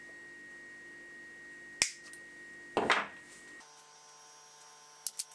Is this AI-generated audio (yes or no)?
no